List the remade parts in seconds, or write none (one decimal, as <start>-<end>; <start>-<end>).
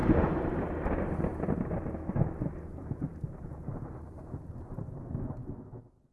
0.0-0.6; 1.3-5.0